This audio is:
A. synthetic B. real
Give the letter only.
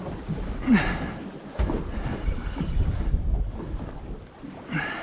B